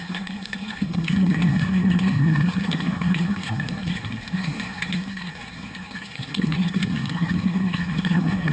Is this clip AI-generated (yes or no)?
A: yes